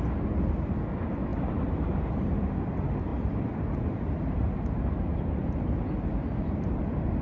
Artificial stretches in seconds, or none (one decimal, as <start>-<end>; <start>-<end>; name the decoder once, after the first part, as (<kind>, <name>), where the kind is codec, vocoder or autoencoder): 1.3-2.4 (vocoder, BigVGAN v2); 3.1-6.8